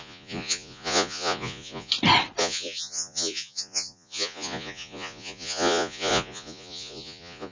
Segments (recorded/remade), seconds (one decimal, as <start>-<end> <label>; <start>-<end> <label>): 0.0-1.9 remade; 1.9-2.4 recorded; 2.4-7.5 remade